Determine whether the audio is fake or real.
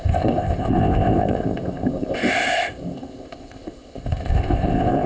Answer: fake